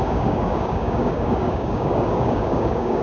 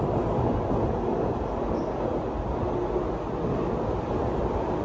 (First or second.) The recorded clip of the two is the second